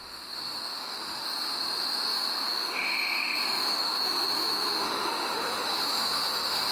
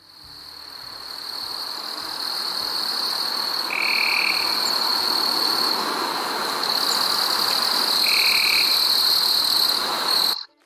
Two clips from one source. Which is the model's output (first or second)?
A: first